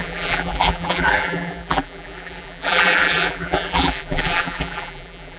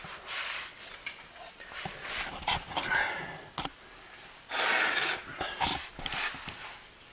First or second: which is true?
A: second